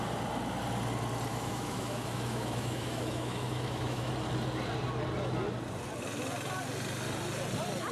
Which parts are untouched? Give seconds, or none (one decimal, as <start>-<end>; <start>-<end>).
0.0-1.3; 4.1-7.9

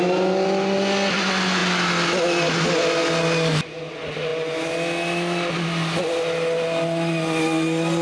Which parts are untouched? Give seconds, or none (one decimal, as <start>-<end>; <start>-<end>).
0.0-8.0

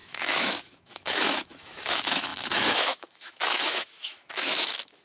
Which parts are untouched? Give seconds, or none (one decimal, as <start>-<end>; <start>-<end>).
none

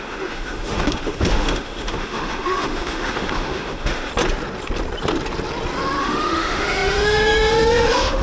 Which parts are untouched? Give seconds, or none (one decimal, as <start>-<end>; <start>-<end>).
4.1-6.0

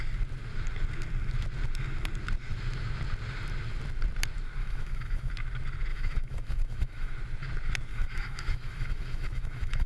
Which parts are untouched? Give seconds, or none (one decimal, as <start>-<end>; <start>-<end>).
0.0-4.6; 5.3-5.9; 7.1-7.9

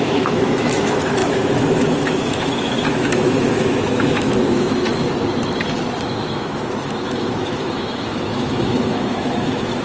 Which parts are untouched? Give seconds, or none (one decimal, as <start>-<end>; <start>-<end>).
4.9-6.0